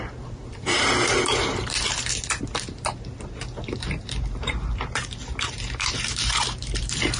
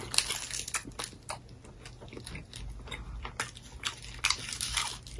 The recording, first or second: second